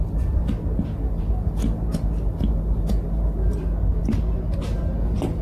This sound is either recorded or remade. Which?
recorded